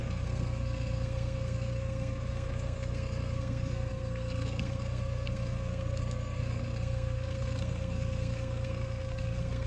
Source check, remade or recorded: remade